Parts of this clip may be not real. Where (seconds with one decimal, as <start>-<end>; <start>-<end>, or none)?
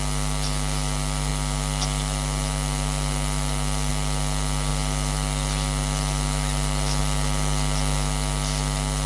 none